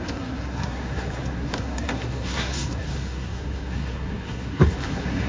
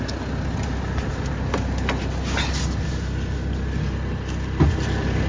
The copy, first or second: first